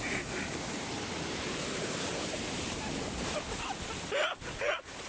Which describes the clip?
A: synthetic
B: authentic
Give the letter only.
B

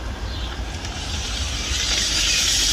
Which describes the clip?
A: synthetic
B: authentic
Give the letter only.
A